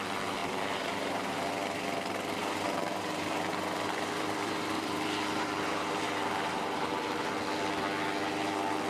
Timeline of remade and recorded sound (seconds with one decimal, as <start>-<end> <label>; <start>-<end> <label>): 0.0-0.4 recorded; 0.4-1.5 remade; 1.5-2.4 recorded; 2.4-7.3 remade; 7.3-8.9 recorded